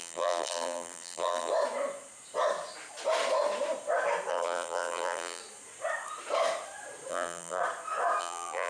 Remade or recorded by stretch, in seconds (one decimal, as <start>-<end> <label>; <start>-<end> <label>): 0.0-1.5 remade; 1.5-4.3 recorded; 4.3-5.4 remade; 5.4-7.1 recorded; 7.1-7.6 remade; 7.6-8.2 recorded; 8.2-8.7 remade